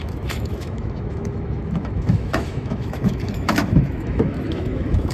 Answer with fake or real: fake